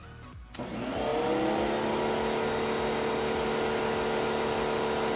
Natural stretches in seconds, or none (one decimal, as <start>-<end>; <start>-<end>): 0.0-5.2